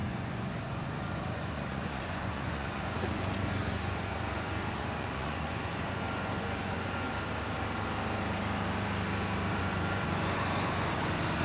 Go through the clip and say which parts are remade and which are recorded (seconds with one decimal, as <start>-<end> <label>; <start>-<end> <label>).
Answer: 0.0-7.1 remade; 7.1-9.6 recorded; 9.6-11.4 remade

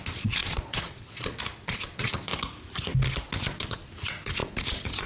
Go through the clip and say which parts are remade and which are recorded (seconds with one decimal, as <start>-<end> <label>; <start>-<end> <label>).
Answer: 0.0-2.3 remade; 2.3-3.4 recorded; 3.4-5.1 remade

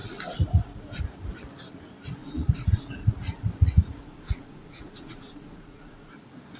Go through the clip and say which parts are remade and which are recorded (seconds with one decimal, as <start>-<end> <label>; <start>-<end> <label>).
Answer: 0.0-1.0 remade; 1.0-2.2 recorded; 2.2-6.1 remade; 6.1-6.6 recorded

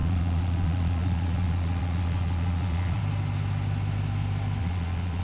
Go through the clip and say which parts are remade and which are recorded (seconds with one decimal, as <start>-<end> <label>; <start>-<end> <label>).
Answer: 0.0-3.0 remade; 3.0-4.6 recorded; 4.6-5.2 remade